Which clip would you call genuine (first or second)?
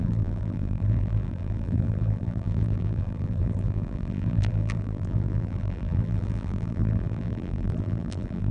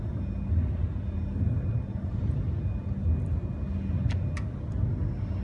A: second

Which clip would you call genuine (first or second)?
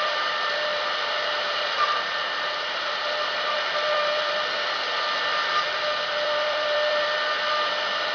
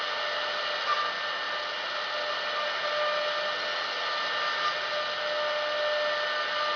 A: second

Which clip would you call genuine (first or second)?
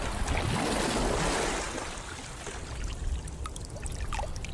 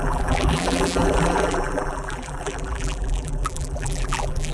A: first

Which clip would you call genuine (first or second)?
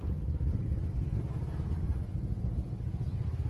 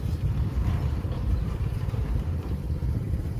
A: first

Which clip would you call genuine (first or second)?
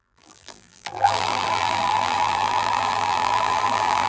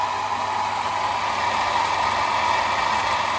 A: second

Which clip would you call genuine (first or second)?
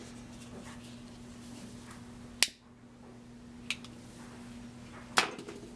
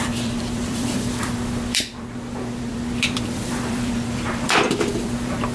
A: first